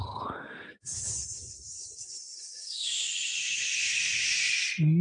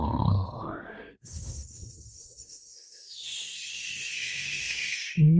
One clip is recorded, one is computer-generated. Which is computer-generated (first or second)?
second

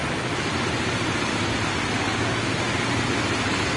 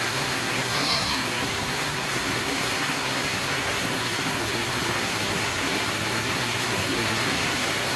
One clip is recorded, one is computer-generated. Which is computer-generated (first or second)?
second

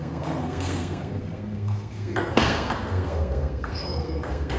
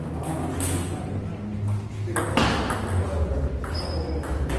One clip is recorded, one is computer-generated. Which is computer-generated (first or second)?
first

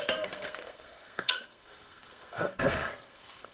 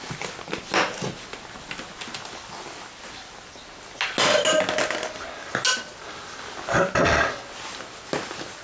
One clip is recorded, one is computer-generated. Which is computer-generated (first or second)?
first